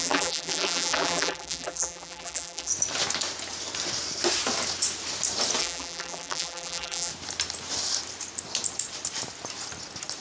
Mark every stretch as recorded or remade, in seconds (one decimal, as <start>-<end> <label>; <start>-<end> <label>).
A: 0.0-2.7 remade; 2.7-5.6 recorded; 5.6-7.1 remade; 7.1-10.2 recorded